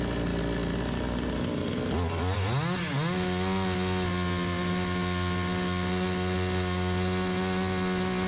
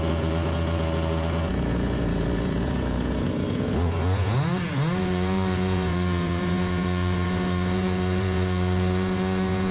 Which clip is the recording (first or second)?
first